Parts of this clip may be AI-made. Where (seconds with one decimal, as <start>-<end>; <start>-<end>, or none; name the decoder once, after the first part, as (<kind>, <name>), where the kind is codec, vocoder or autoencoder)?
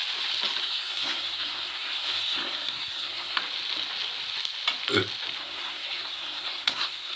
0.6-3.4 (codec, SNAC); 5.4-7.2